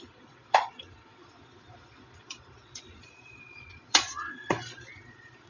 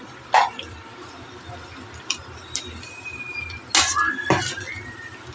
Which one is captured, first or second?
second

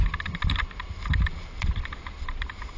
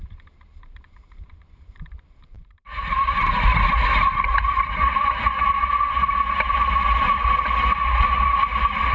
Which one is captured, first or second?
first